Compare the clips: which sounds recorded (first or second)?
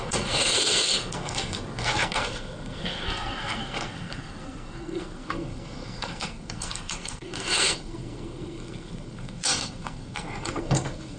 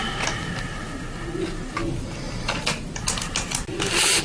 second